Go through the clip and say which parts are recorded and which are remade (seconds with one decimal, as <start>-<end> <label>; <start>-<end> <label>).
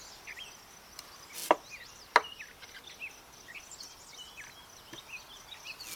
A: 0.0-6.0 recorded